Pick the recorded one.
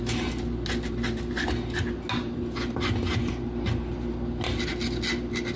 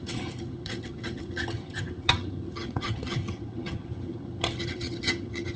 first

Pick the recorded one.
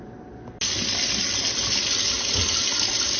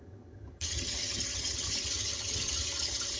first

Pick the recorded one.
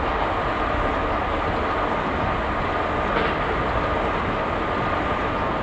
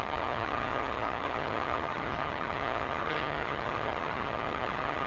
first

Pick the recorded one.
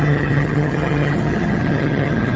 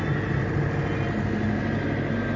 second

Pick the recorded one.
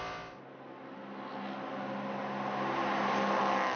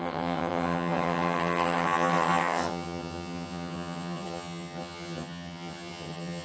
first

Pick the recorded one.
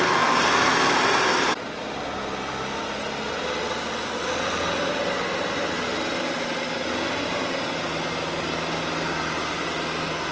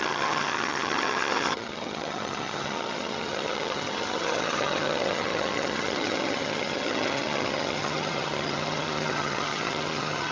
first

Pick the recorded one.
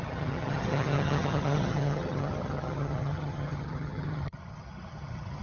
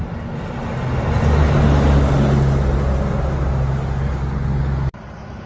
second